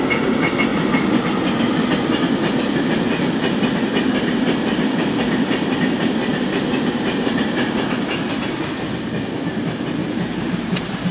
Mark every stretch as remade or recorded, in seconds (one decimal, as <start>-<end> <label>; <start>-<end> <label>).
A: 0.0-6.3 recorded; 6.3-8.0 remade; 8.0-10.0 recorded; 10.0-11.1 remade